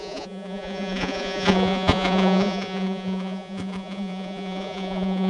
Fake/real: fake